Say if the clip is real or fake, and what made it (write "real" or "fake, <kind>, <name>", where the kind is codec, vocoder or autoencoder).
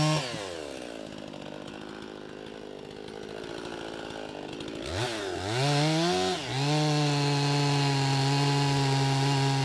real